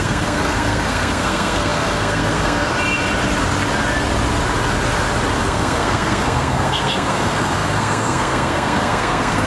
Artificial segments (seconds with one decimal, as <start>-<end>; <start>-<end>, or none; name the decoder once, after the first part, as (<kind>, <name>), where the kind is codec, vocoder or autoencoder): 0.0-2.7 (codec, SNAC); 5.4-9.5